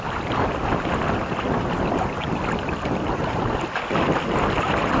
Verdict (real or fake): real